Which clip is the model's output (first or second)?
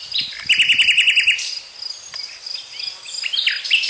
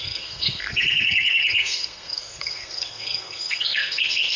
second